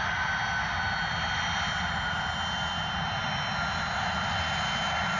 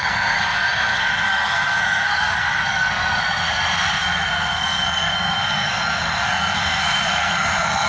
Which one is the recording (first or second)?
first